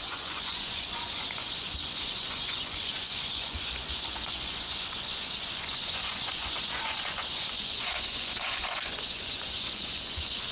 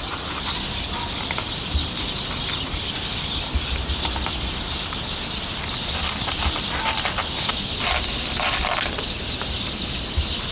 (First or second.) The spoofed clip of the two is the first